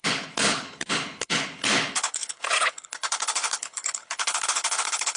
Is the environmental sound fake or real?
fake